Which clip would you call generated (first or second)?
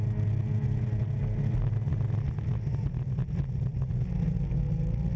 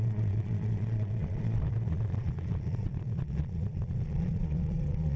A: second